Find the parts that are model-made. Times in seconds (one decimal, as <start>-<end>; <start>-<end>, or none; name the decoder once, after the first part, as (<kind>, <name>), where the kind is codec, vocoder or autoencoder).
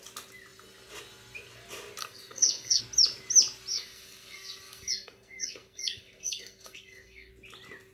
2.0-2.8 (codec, SNAC); 3.7-7.3